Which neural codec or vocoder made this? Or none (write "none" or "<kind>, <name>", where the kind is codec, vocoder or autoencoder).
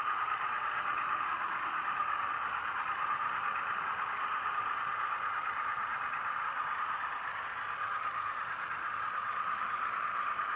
none